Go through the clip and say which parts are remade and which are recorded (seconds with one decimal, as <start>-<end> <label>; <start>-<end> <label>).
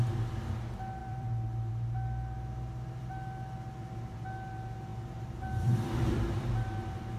0.0-1.0 recorded; 1.0-1.7 remade; 1.7-4.9 recorded; 4.9-6.5 remade; 6.5-7.2 recorded